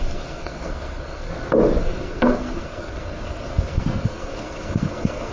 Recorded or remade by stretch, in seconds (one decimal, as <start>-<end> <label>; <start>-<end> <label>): 0.0-1.3 remade; 1.3-1.8 recorded; 1.8-5.3 remade